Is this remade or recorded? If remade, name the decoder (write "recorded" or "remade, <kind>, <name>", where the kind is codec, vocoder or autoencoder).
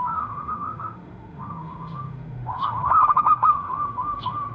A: remade, autoencoder, DAC-VAE